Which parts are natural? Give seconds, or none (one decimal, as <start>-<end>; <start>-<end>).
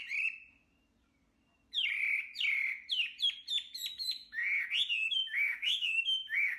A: 0.0-3.9; 4.4-5.1